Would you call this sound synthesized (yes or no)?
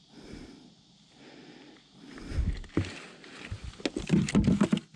no